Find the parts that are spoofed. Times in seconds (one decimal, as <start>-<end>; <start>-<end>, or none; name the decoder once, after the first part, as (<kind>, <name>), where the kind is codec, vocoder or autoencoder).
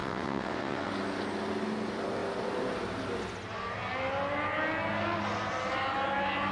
0.0-0.9 (vocoder, WaveNeXt)